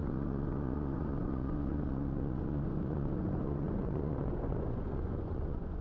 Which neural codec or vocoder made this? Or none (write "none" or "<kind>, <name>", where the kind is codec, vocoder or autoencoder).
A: vocoder, Vocos